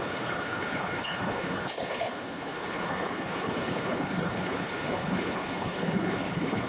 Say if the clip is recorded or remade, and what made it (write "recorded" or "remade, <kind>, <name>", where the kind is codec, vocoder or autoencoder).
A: remade, codec, HILCodec